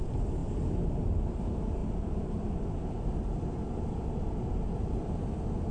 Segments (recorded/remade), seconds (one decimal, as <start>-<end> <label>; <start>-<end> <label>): 0.0-5.7 recorded